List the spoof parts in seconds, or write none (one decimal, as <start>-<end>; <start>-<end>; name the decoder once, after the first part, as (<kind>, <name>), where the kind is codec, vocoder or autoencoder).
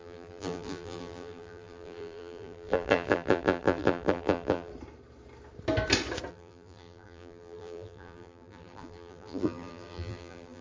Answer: 0.0-4.7 (vocoder, BigVGAN v2); 6.3-10.6